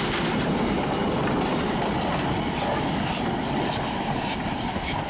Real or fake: real